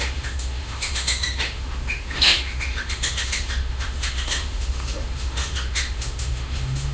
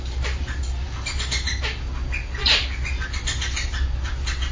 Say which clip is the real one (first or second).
second